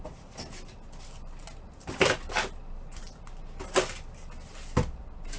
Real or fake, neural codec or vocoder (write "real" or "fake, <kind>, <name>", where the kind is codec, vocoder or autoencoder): real